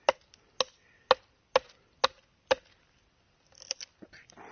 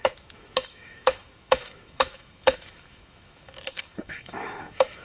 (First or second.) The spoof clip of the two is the second